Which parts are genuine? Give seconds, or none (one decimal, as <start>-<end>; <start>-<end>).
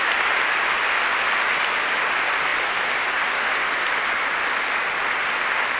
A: 0.0-5.8